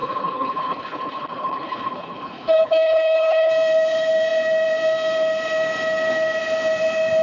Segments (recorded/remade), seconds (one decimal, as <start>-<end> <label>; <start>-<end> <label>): 0.0-3.5 remade; 3.5-7.2 recorded